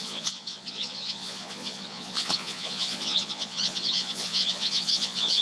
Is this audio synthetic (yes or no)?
yes